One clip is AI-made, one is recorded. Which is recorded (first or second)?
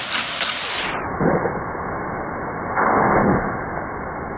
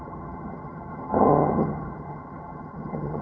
first